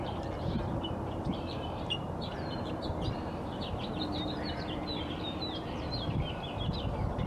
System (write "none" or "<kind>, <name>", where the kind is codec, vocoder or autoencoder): vocoder, BigVGAN v2